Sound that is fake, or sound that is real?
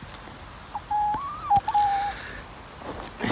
real